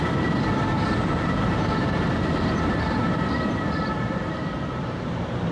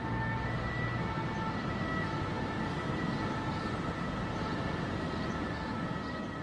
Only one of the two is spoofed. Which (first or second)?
first